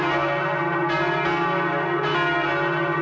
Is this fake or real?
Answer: real